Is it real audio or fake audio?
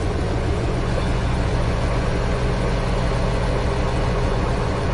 fake